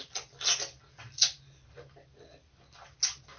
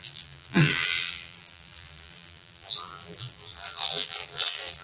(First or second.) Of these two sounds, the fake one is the second